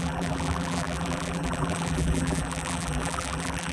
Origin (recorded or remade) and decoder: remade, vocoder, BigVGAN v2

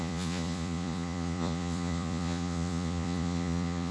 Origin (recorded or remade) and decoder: remade, vocoder, Vocos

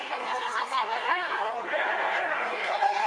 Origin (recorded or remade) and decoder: remade, codec, SNAC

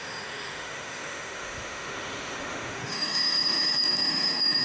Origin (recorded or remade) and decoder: remade, autoencoder, DAC-VAE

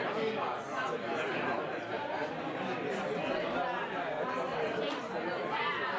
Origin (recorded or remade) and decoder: recorded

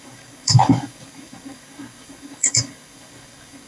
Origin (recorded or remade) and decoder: remade, codec, DAC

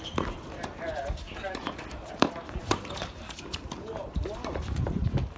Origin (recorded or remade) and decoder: remade, vocoder, BigVGAN v2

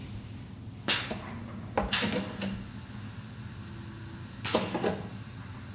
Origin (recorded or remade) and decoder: recorded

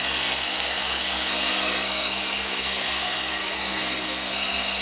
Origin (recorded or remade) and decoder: remade, codec, SNAC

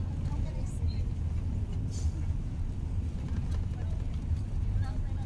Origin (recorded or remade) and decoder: recorded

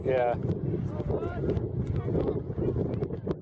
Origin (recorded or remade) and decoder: recorded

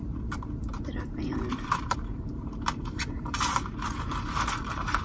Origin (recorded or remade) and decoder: remade, vocoder, BigVGAN v2